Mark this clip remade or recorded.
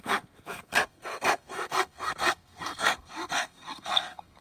remade